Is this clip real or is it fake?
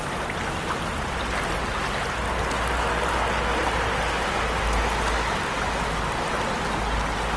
real